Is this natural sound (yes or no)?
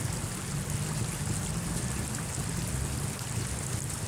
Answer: yes